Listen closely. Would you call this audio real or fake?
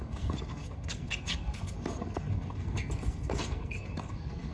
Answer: fake